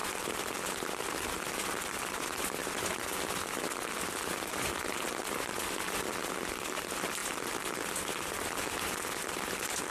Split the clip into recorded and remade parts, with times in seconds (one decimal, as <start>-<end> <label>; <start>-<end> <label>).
0.0-9.9 recorded